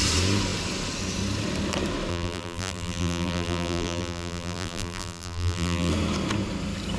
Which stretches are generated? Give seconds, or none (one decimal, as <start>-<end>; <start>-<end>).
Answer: 2.1-5.9